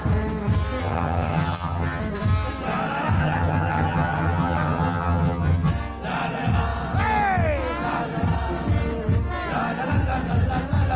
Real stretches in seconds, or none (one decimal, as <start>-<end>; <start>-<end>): 0.0-0.8; 2.0-3.2; 5.7-11.0